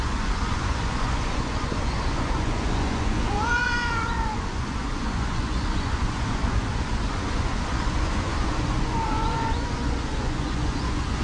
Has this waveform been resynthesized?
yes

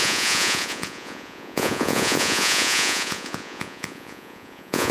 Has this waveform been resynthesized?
yes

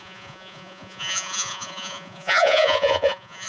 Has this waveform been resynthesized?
yes